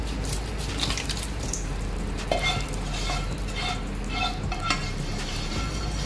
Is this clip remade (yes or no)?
no